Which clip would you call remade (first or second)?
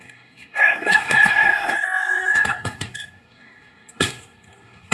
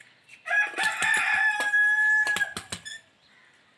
first